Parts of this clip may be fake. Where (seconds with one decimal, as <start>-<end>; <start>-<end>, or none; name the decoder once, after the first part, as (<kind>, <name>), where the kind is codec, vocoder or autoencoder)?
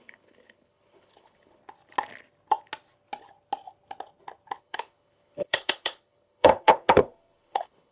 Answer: 0.0-1.6 (codec, HILCodec); 4.6-7.9